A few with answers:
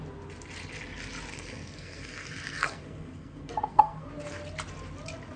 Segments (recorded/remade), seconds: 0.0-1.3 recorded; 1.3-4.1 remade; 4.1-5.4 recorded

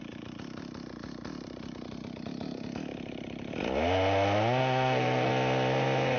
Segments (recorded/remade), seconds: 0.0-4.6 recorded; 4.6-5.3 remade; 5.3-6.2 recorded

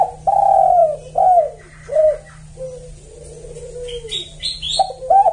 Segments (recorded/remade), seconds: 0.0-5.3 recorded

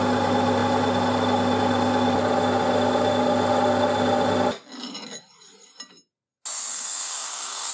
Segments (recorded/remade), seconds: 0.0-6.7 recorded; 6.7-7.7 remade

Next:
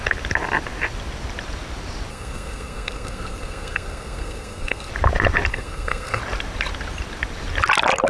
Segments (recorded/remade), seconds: 0.0-2.1 recorded; 2.1-4.9 remade; 4.9-5.5 recorded; 5.5-6.2 remade; 6.2-8.1 recorded

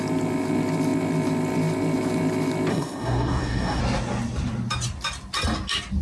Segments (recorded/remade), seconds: 0.0-2.7 recorded; 2.7-3.8 remade; 3.8-6.0 recorded